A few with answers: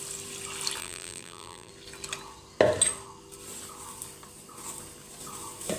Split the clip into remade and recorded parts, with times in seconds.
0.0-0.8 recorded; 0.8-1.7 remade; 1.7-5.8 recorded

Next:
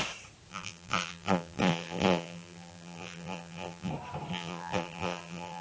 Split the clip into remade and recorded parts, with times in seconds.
0.0-0.5 recorded; 0.5-3.9 remade; 3.9-4.3 recorded; 4.3-5.6 remade

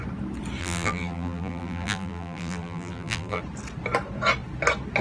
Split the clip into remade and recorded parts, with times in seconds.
0.0-0.6 recorded; 0.6-3.4 remade; 3.4-5.0 recorded

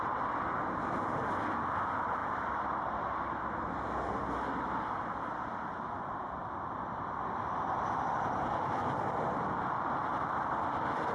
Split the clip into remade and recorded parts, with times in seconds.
0.0-2.2 recorded; 2.2-3.0 remade; 3.0-6.4 recorded; 6.4-9.2 remade; 9.2-11.1 recorded